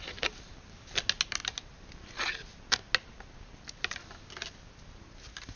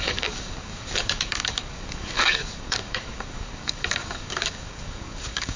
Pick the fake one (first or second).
second